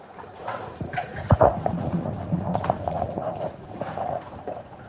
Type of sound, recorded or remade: remade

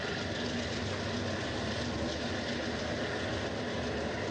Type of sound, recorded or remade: recorded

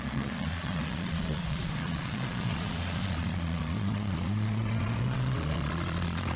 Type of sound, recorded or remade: remade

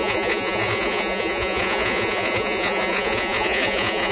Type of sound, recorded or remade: remade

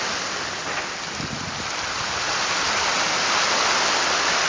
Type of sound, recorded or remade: recorded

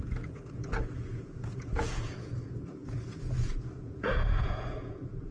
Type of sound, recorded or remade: remade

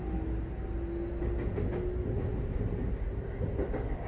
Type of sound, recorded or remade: recorded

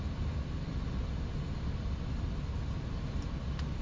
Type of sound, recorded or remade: recorded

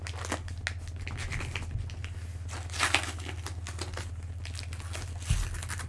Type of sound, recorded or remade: recorded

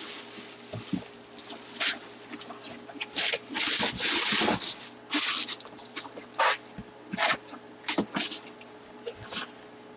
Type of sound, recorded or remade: recorded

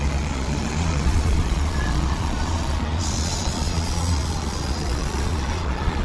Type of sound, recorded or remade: remade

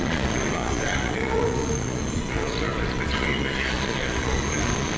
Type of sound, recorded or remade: remade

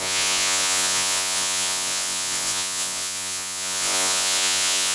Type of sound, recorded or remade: remade